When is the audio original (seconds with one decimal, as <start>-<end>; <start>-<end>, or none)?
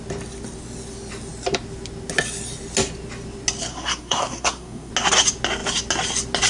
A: 0.0-3.7; 4.9-6.5